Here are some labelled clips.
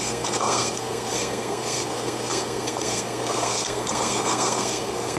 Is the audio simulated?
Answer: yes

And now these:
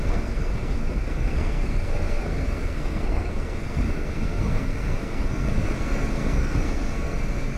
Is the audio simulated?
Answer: yes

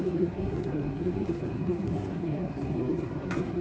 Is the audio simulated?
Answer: yes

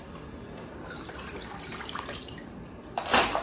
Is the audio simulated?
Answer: no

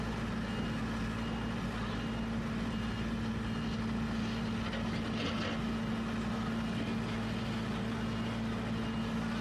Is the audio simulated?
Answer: no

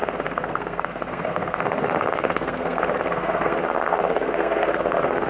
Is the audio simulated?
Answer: yes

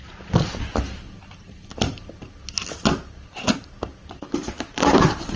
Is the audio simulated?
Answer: no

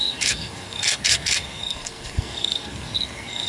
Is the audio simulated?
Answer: yes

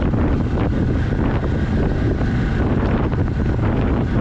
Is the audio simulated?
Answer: no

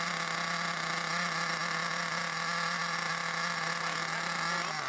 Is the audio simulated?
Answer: no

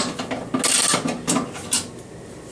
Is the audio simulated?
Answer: no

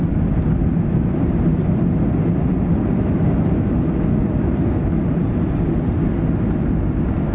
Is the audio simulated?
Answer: no